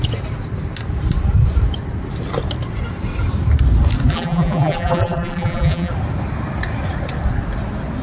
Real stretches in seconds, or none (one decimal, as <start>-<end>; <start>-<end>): 0.0-4.1; 5.9-8.0